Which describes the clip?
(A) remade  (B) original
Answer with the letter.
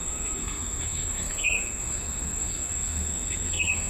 A